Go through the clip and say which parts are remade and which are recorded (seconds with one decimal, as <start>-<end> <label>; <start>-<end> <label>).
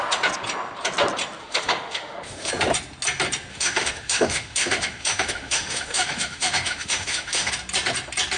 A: 0.0-1.4 recorded; 1.4-2.5 remade; 2.5-3.5 recorded; 3.5-7.5 remade; 7.5-8.4 recorded